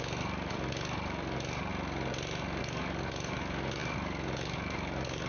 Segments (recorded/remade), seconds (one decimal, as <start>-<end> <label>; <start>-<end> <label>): 0.0-1.7 remade; 1.7-2.6 recorded; 2.6-5.3 remade